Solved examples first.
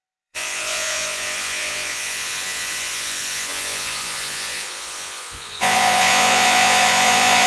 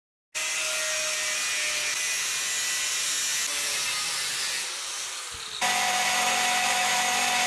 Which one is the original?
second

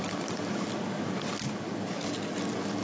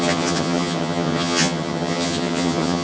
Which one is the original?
first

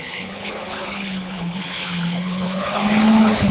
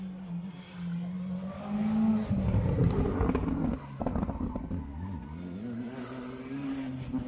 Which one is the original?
second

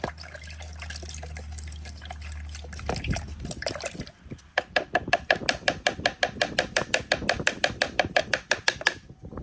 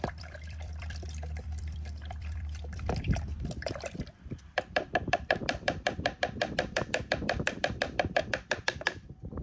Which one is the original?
first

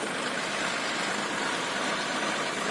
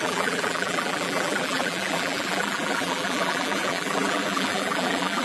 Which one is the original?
first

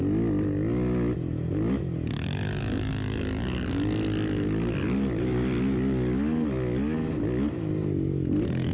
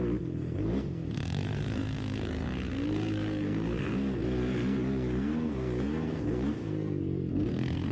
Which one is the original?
first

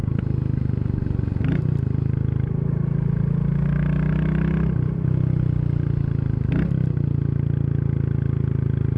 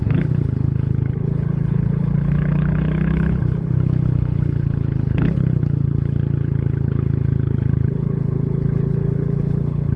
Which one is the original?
first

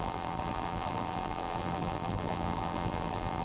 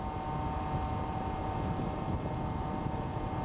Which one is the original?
second